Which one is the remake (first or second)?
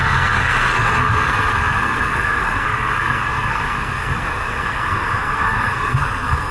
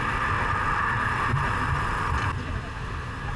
first